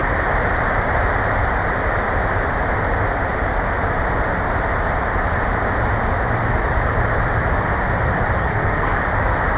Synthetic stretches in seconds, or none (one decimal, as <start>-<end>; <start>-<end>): 8.4-9.0